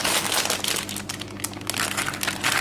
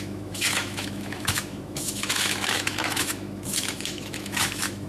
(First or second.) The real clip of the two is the first